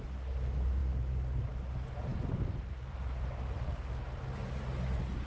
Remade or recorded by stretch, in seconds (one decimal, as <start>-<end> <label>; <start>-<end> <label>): 0.0-5.3 recorded